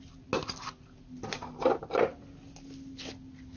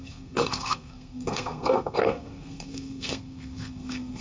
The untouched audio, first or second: first